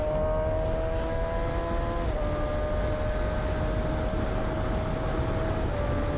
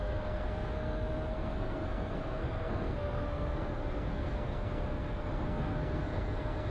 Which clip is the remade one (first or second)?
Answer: second